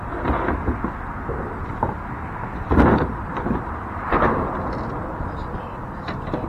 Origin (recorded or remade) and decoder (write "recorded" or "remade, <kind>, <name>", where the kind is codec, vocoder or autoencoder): recorded